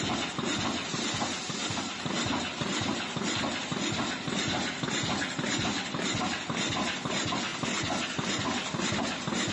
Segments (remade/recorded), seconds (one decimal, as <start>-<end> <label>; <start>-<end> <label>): 0.0-9.5 recorded